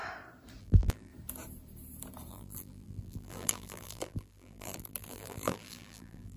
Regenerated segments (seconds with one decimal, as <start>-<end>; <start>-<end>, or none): 0.6-1.1; 2.3-6.4